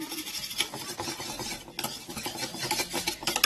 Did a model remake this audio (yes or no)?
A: no